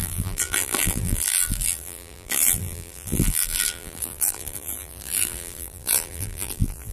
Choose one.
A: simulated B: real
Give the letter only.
A